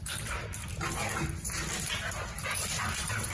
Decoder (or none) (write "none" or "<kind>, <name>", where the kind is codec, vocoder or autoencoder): none